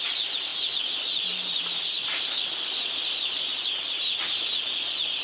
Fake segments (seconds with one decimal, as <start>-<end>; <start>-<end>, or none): none